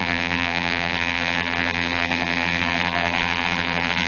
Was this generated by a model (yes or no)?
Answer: yes